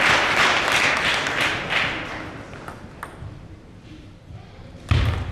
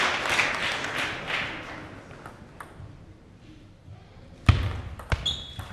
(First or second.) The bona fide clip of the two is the second